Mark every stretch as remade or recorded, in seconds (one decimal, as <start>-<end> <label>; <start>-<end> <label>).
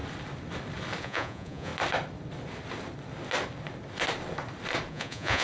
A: 0.0-1.0 recorded; 1.0-1.7 remade; 1.7-4.9 recorded; 4.9-5.4 remade